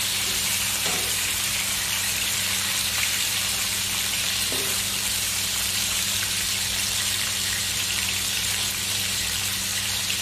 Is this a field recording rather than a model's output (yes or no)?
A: no